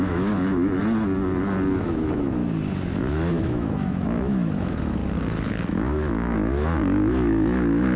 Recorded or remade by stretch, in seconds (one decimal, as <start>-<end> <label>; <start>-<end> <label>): 0.0-0.8 remade; 0.8-1.8 recorded; 1.8-2.4 remade; 2.4-3.0 recorded; 3.0-5.0 remade; 5.0-5.7 recorded; 5.7-8.0 remade